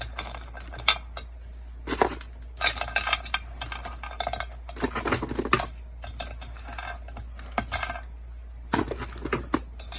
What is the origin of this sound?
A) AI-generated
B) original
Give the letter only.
B